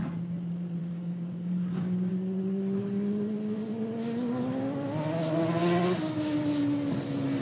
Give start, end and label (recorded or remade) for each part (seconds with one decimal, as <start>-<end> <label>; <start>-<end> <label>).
0.0-0.8 recorded; 0.8-2.1 remade; 2.1-7.4 recorded